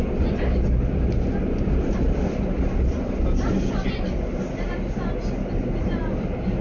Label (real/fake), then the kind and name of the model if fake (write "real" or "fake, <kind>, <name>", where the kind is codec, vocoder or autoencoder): real